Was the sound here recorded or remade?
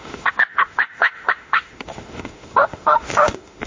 remade